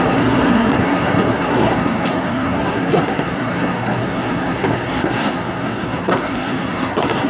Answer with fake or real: fake